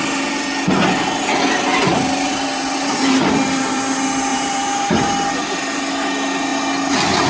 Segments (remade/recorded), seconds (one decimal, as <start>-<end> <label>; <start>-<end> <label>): 0.0-1.7 recorded; 1.7-3.8 remade; 3.8-4.3 recorded; 4.3-5.1 remade; 5.1-7.3 recorded